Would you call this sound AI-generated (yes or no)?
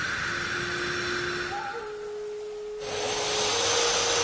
no